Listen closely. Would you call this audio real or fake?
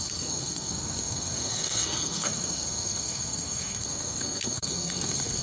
fake